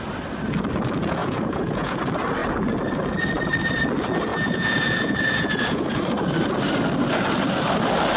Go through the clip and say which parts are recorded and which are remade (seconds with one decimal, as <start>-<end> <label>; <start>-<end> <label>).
0.0-1.2 recorded; 1.2-2.0 remade; 2.0-4.3 recorded; 4.3-6.0 remade; 6.0-8.2 recorded